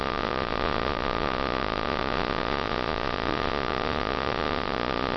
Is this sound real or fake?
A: fake